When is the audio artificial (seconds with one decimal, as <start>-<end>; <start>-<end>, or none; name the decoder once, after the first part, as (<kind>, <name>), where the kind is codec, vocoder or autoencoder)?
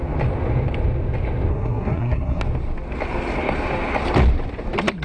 1.5-2.4 (codec, SNAC)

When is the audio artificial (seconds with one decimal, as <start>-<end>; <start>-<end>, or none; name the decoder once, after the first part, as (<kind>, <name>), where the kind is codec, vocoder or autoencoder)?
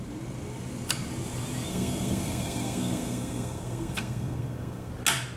1.7-4.9 (codec, SNAC)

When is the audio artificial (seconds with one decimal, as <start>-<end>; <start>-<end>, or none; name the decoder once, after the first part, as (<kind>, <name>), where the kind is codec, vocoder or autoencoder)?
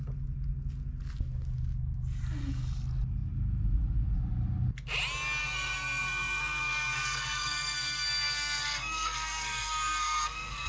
5.4-10.7 (codec, SNAC)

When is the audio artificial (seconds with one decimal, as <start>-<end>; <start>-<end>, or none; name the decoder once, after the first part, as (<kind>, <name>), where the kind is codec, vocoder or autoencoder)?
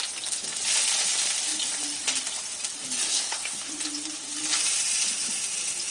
3.1-3.7 (codec, SNAC)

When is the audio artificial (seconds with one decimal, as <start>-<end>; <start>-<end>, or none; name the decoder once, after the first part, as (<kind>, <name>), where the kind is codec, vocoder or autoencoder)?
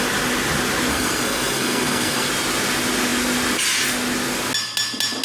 0.9-2.3 (codec, SNAC)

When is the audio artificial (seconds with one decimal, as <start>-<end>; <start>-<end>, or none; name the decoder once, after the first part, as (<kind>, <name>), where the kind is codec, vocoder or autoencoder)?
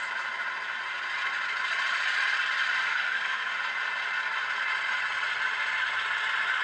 2.9-3.5 (codec, SNAC)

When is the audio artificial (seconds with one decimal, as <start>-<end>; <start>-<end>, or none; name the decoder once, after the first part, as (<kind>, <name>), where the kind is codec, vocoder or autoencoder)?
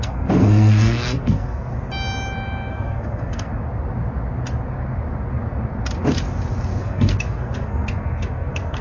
0.0-1.7 (codec, SNAC); 2.7-3.5; 6.8-8.8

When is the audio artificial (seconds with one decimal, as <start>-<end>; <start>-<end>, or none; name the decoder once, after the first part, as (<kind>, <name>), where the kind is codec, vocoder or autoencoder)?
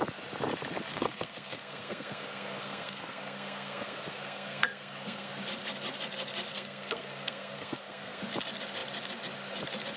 0.9-5.3 (codec, SNAC); 6.5-8.2